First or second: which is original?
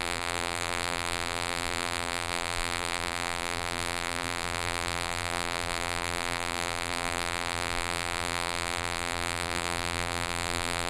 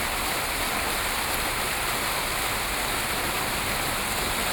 second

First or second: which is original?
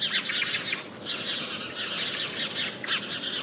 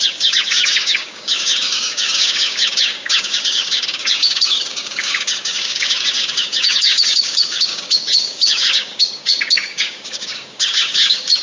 first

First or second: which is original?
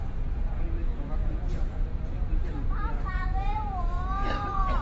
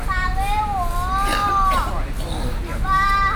second